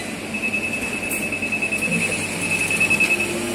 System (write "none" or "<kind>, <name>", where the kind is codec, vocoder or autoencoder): none